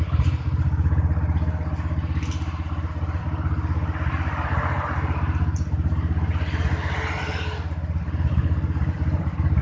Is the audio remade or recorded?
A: recorded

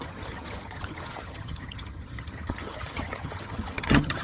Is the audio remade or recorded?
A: remade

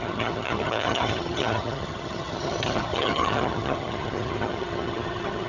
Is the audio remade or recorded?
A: remade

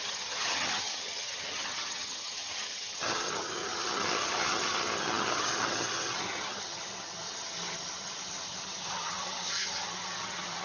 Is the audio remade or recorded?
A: remade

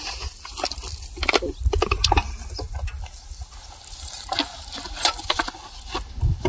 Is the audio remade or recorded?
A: recorded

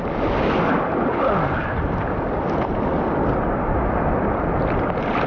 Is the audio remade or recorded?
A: recorded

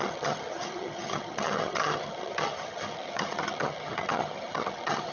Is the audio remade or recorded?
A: remade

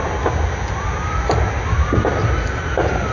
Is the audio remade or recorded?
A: recorded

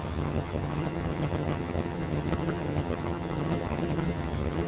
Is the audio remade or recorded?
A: remade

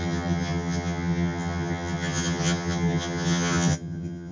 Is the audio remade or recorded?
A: remade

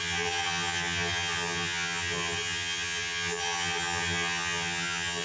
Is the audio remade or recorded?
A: remade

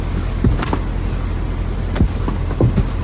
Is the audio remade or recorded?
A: recorded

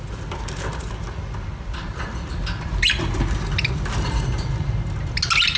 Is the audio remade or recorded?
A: recorded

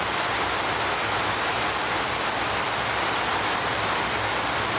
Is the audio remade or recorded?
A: recorded